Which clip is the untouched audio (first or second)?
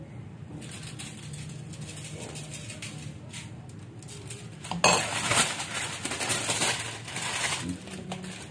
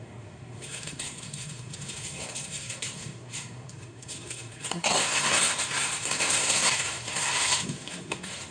first